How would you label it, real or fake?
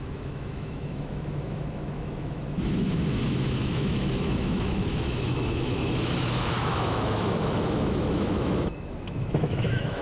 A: fake